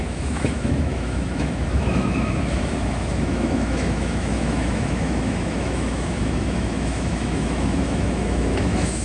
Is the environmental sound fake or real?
fake